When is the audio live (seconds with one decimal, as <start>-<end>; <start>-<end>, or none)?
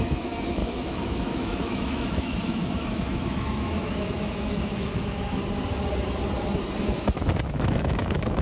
5.4-6.8